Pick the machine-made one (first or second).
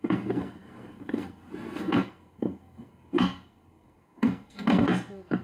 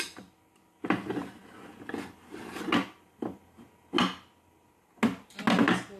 first